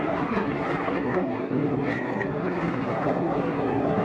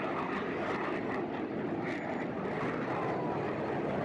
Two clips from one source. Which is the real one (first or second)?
second